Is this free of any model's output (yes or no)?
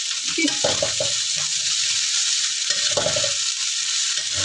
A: yes